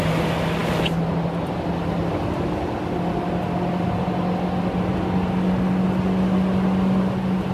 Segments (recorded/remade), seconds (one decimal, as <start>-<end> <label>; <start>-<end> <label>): 0.0-7.5 recorded